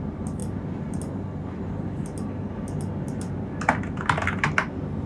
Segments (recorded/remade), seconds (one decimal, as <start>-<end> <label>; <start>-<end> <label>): 0.0-5.1 recorded